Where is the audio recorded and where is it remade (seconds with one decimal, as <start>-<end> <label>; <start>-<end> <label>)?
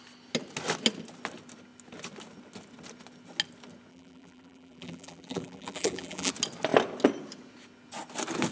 0.0-3.9 recorded; 3.9-6.3 remade; 6.3-8.5 recorded